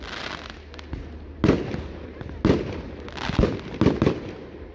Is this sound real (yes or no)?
yes